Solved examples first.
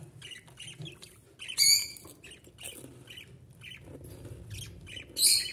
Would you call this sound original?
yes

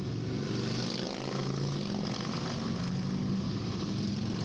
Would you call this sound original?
yes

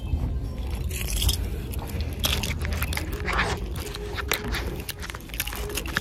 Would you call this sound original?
yes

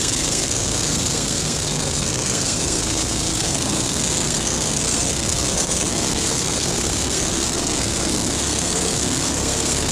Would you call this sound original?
no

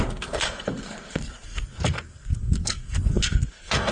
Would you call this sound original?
no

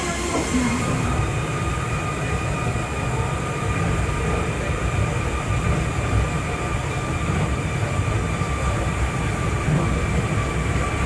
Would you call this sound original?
yes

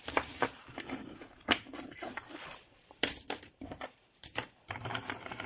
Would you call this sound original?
no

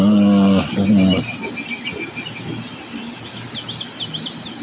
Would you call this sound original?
yes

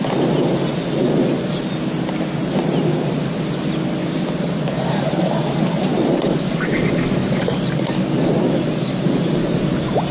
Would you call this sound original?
yes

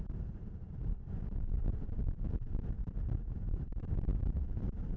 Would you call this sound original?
no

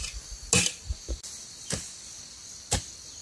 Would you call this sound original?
yes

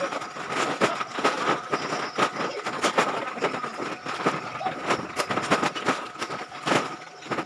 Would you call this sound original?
yes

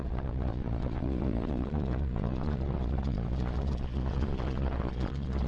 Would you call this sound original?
no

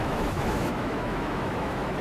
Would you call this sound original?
no